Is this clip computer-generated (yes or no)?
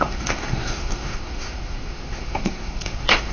yes